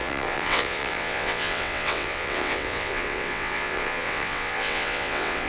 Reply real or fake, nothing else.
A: fake